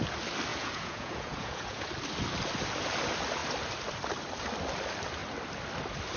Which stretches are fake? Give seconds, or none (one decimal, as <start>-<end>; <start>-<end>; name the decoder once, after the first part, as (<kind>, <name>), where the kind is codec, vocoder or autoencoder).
0.5-1.9 (vocoder, Vocos)